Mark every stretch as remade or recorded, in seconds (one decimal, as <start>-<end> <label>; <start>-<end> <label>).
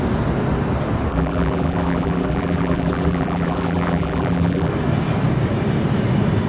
0.0-1.1 recorded; 1.1-4.7 remade; 4.7-6.5 recorded